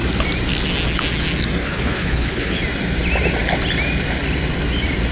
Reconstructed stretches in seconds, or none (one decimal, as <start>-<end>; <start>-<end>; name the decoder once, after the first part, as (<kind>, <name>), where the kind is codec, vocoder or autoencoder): 1.6-2.6 (codec, HILCodec)